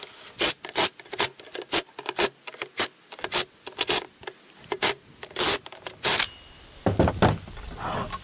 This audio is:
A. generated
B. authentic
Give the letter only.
B